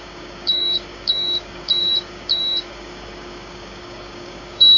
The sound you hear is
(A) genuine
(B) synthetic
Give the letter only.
B